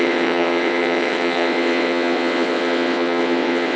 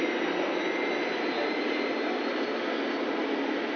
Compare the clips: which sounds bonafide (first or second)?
second